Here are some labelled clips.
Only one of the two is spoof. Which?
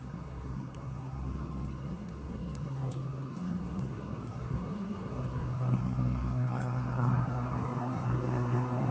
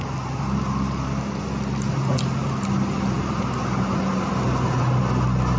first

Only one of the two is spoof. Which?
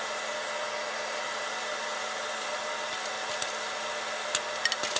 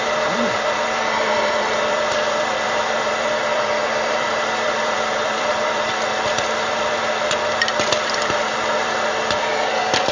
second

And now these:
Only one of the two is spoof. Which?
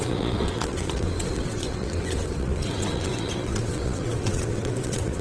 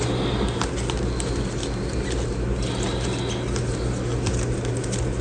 first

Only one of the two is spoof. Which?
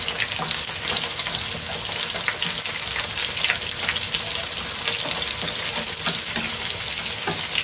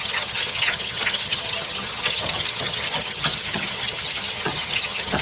second